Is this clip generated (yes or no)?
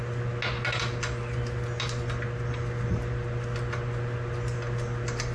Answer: no